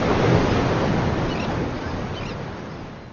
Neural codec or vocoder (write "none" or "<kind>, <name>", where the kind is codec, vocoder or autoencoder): none